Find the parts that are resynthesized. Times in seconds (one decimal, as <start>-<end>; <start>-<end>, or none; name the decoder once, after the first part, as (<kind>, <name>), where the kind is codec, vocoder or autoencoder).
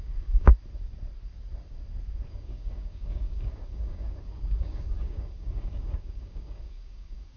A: 0.0-0.5 (codec, DAC); 2.3-7.4